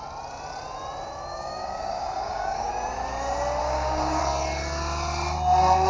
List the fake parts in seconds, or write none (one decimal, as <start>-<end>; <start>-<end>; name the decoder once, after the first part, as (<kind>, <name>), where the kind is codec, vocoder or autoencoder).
1.3-2.7 (codec, DAC); 3.6-4.2